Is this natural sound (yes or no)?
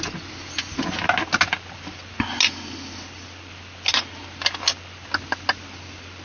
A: yes